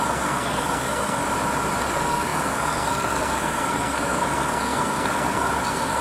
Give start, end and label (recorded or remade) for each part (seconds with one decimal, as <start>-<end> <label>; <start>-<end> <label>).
0.0-1.2 remade; 1.2-1.8 recorded; 1.8-6.0 remade